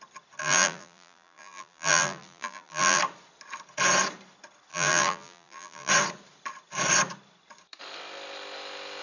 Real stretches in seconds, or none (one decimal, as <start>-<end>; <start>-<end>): 0.0-0.4; 3.0-4.7; 5.9-9.0

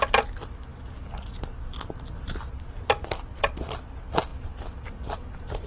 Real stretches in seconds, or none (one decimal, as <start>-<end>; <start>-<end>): 0.0-4.3

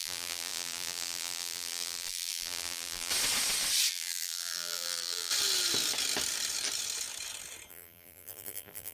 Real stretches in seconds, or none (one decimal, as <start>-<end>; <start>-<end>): 3.1-3.9; 5.3-7.7

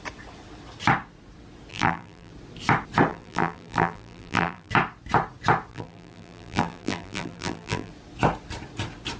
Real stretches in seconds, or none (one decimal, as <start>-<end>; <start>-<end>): 0.0-1.7; 2.3-3.1; 4.7-5.7; 7.9-9.2

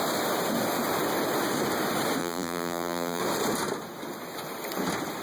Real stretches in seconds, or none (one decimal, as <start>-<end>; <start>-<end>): 0.0-2.2; 3.2-5.2

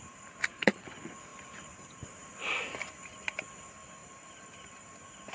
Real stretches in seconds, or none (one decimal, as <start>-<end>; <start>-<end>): 0.0-0.4; 0.9-1.3; 2.1-4.0